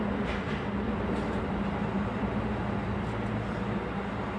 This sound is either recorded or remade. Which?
recorded